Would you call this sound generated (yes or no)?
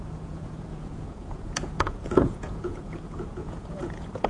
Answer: yes